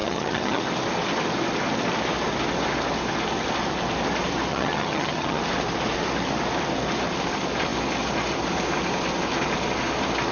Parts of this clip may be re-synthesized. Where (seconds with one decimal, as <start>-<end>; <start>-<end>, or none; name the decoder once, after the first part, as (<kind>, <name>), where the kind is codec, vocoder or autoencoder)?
0.0-0.6 (vocoder, HiFi-GAN); 4.5-5.4